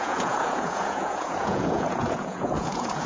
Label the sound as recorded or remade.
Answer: remade